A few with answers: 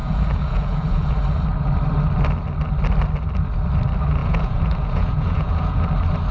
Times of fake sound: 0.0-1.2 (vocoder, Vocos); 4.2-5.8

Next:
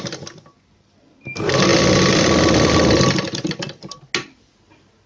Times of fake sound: none

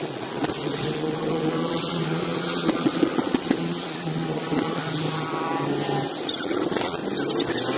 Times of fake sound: 0.0-4.8 (vocoder, Vocos); 6.2-7.0